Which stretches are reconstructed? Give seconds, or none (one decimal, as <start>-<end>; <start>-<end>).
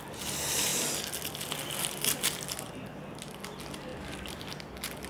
none